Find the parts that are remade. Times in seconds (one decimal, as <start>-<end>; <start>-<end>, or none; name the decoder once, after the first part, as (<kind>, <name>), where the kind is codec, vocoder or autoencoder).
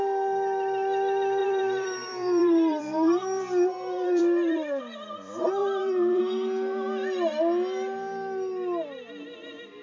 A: 1.4-4.8 (vocoder, BigVGAN v2); 5.6-6.2